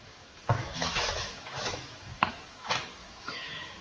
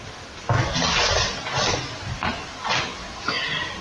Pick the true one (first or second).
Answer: second